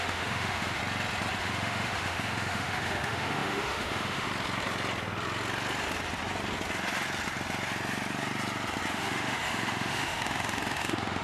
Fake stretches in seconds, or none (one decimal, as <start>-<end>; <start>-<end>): 0.0-0.8; 1.4-4.3; 8.9-11.2